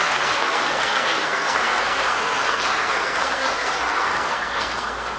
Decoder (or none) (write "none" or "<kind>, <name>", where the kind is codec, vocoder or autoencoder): codec, SNAC